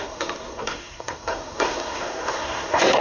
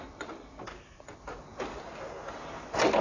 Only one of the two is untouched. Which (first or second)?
second